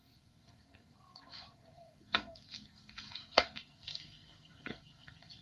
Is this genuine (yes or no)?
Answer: no